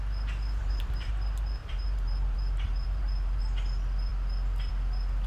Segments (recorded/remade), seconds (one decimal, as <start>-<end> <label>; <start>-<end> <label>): 0.0-0.6 recorded; 0.6-1.1 remade; 1.1-1.6 recorded; 1.6-3.4 remade; 3.4-5.3 recorded